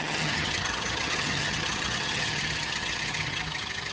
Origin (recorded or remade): remade